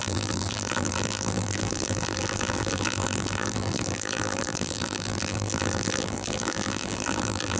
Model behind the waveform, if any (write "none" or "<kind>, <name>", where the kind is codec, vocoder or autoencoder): vocoder, BigVGAN v2